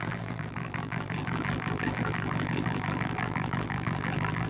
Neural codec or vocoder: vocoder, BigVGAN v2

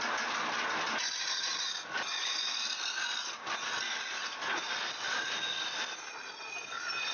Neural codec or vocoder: none